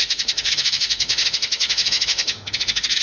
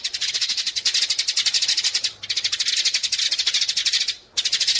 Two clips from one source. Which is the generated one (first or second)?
first